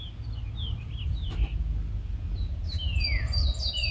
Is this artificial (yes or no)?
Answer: no